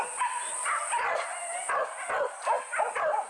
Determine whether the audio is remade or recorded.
recorded